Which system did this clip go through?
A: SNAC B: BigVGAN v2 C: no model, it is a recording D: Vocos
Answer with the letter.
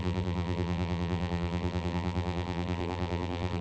B